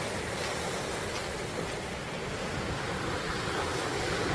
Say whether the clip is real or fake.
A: real